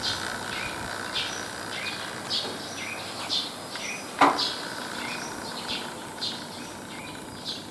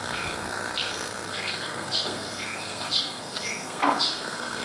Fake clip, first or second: second